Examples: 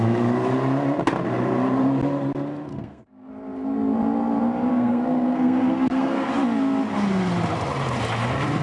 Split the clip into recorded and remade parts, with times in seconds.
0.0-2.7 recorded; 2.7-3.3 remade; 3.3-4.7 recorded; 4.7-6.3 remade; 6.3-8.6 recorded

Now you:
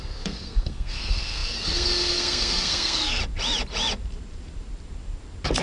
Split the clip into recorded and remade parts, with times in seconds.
0.0-3.2 remade; 3.2-5.6 recorded

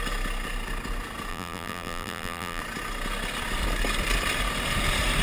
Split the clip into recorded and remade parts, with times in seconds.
0.0-1.3 recorded; 1.3-2.6 remade; 2.6-5.2 recorded

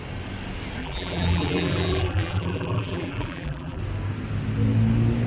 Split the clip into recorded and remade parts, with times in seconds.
0.0-0.8 recorded; 0.8-3.8 remade; 3.8-5.3 recorded